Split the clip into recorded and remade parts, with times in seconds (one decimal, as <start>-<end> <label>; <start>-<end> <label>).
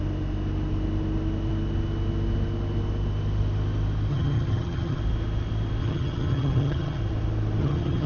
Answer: 0.0-4.1 recorded; 4.1-5.0 remade; 5.0-5.8 recorded; 5.8-7.0 remade; 7.0-7.6 recorded; 7.6-8.1 remade